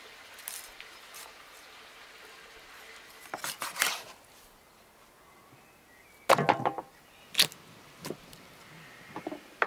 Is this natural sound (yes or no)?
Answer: yes